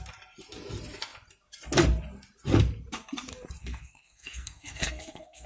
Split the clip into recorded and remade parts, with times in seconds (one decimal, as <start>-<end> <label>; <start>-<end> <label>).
0.0-3.6 recorded; 3.6-5.5 remade